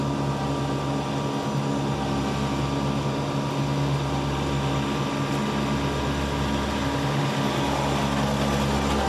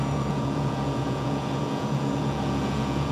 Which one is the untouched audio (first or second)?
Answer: first